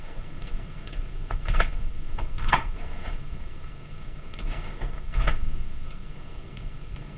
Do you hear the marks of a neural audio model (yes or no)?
yes